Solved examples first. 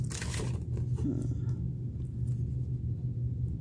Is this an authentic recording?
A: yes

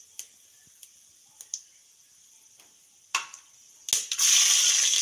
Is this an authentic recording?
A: yes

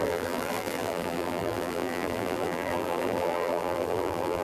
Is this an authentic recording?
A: no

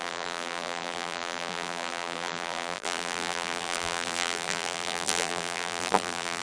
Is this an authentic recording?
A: no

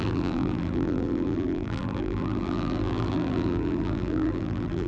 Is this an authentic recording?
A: no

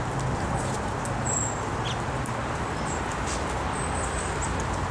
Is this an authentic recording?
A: yes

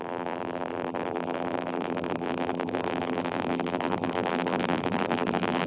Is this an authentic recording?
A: no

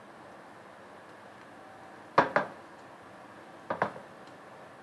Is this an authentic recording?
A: yes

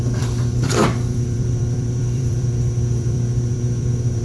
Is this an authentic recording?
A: no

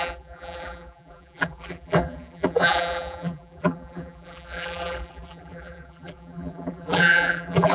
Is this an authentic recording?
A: no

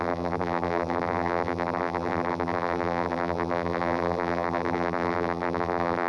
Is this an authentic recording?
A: no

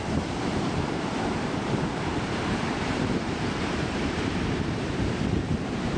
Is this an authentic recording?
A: no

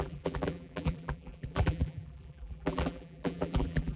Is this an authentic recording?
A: no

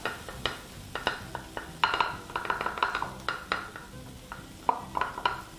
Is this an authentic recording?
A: yes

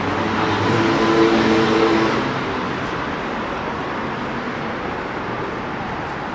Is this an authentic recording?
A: no